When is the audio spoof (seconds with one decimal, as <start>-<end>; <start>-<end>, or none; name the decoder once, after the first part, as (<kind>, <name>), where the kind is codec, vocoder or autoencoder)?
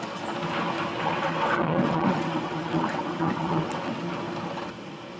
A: 0.9-4.0 (vocoder, WaveNeXt)